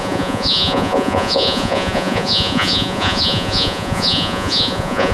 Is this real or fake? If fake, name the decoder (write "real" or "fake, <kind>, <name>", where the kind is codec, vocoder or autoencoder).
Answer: fake, vocoder, Vocos